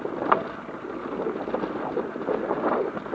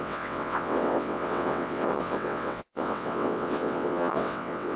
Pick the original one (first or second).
first